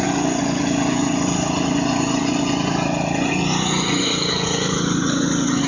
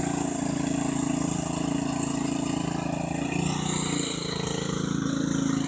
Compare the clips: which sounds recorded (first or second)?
second